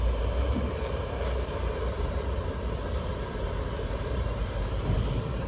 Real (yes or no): no